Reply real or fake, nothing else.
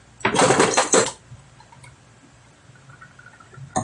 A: real